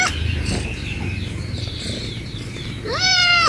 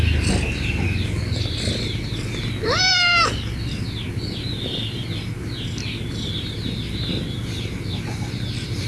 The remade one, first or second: first